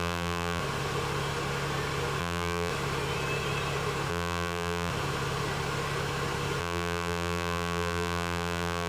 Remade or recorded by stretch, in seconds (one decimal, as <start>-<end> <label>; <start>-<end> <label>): 0.0-0.6 remade; 0.6-2.2 recorded; 2.2-2.7 remade; 2.7-4.1 recorded; 4.1-4.9 remade; 4.9-6.6 recorded; 6.6-8.9 remade